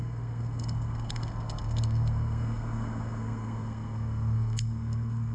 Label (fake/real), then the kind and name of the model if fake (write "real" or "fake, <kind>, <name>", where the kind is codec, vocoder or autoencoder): fake, codec, SNAC